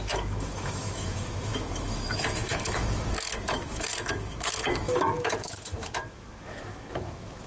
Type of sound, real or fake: fake